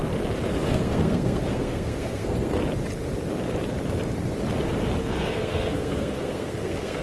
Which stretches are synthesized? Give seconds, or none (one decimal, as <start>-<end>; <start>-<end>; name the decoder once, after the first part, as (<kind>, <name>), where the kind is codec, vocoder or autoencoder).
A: 0.7-2.6 (codec, SNAC); 5.0-7.0